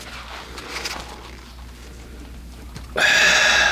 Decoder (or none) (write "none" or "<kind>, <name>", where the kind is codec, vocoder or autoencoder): none